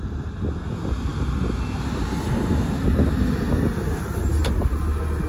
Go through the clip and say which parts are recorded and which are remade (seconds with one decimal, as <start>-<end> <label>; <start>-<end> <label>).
0.0-5.3 recorded